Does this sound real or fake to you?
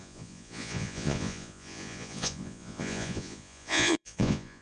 fake